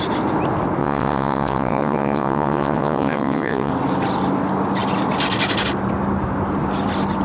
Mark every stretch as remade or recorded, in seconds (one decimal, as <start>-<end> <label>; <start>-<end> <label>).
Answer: 0.0-0.8 recorded; 0.8-3.7 remade; 3.7-7.2 recorded